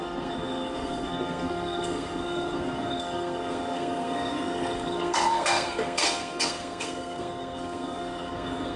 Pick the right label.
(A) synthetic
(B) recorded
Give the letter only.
A